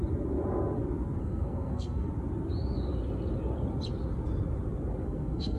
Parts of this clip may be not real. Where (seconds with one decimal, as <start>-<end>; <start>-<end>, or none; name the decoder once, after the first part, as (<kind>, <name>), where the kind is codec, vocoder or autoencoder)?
1.2-2.1 (codec, SNAC); 5.0-5.6